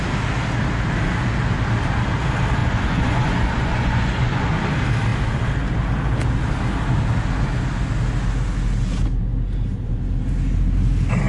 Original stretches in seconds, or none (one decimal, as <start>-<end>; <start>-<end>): 0.0-2.6; 4.5-11.3